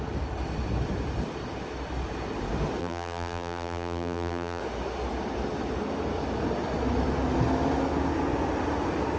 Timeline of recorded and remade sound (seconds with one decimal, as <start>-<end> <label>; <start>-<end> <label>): 0.0-2.8 recorded; 2.8-4.6 remade; 4.6-9.2 recorded